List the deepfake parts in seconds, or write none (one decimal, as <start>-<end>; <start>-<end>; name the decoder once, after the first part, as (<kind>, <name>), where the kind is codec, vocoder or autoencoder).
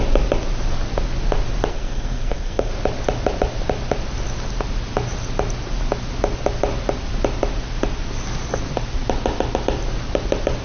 1.7-2.7 (codec, SNAC)